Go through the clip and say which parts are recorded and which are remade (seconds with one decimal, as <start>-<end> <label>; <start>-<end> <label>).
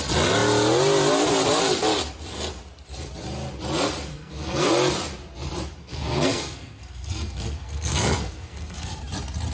0.0-4.1 recorded; 4.1-4.7 remade; 4.7-5.8 recorded; 5.8-9.0 remade; 9.0-9.5 recorded